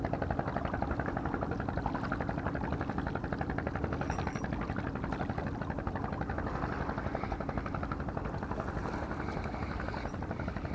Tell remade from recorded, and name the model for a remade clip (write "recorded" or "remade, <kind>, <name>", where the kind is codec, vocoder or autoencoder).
recorded